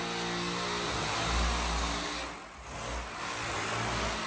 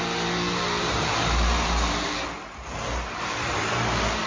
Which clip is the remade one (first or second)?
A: second